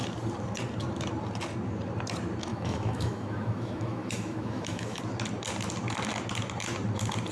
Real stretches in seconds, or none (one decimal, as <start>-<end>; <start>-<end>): 0.0-2.5; 5.0-7.3